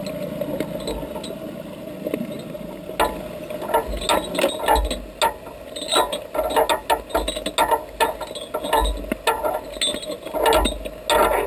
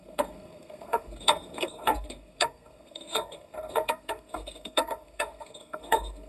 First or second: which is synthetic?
second